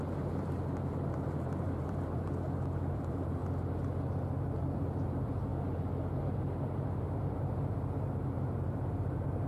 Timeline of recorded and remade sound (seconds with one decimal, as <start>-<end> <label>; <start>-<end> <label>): 0.0-2.3 remade; 2.3-2.9 recorded; 2.9-3.4 remade; 3.4-4.4 recorded; 4.4-9.5 remade